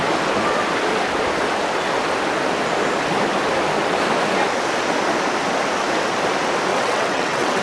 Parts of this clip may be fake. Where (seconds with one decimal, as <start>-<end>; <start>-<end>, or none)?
6.7-7.6